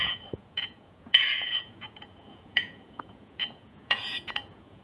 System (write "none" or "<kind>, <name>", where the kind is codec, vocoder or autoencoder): vocoder, Vocos